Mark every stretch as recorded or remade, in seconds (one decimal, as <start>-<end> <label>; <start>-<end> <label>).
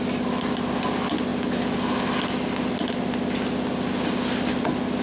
0.0-5.0 recorded